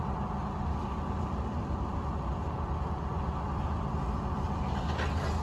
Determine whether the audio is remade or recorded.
recorded